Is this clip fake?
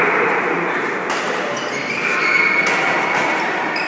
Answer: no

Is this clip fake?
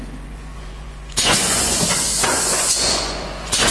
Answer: yes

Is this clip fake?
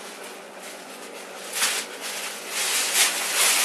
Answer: yes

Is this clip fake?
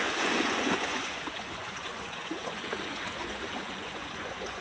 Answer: yes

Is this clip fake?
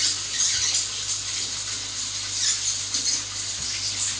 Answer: no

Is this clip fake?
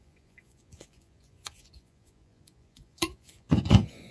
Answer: yes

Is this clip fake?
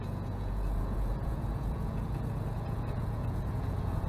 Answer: yes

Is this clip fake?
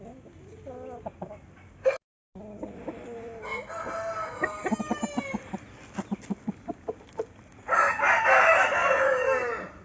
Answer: no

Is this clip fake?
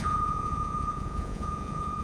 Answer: yes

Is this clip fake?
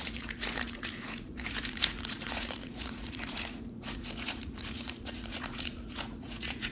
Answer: yes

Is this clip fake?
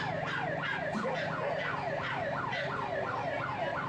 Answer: no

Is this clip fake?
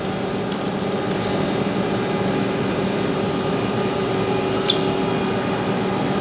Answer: no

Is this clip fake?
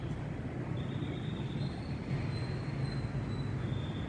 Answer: no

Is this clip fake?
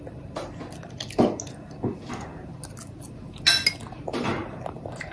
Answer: no